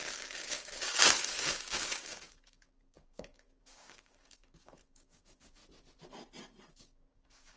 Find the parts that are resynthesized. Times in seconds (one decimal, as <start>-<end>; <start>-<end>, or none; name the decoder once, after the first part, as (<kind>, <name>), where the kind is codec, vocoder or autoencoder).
0.0-5.6 (codec, DAC); 6.7-7.6